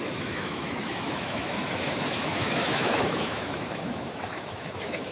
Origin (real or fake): fake